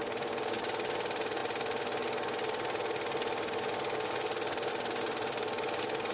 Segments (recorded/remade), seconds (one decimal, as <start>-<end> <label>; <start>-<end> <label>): 0.0-6.1 recorded